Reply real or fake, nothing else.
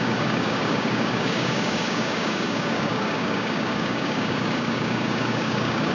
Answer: fake